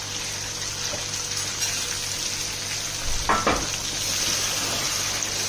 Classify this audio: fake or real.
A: real